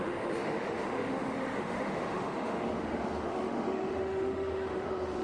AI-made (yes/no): yes